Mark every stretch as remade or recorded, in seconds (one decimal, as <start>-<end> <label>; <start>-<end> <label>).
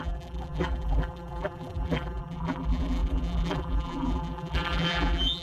0.0-5.4 remade